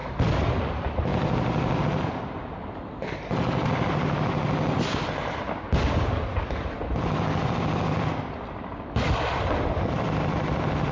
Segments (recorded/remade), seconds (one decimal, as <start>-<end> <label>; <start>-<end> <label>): 0.0-10.9 recorded